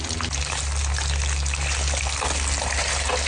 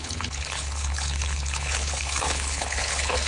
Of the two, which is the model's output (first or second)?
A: second